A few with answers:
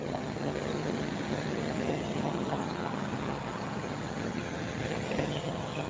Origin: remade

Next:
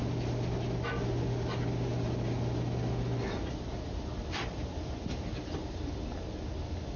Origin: recorded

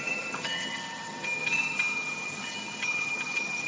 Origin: remade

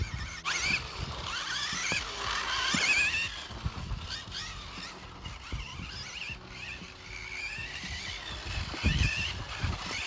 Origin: recorded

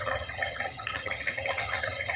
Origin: remade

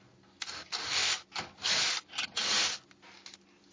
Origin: recorded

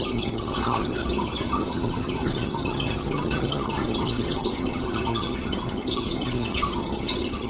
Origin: remade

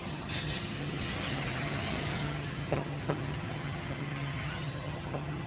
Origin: remade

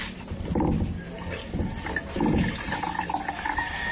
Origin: recorded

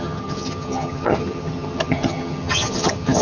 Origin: remade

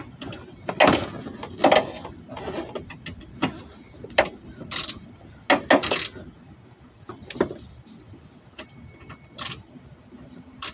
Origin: recorded